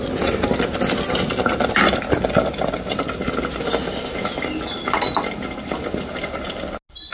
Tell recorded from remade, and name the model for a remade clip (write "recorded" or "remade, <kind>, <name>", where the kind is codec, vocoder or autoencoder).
recorded